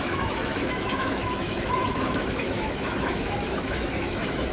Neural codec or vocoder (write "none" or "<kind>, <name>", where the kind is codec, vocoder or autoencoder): autoencoder, DAC-VAE